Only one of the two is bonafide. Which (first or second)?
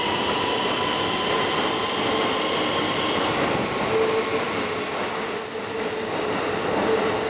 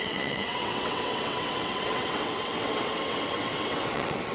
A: first